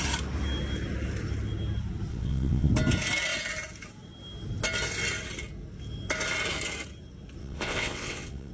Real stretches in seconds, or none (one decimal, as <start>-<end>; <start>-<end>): 0.0-2.1; 2.7-7.4